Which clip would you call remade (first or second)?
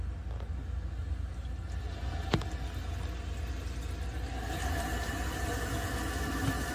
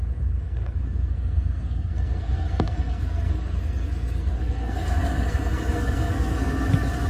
second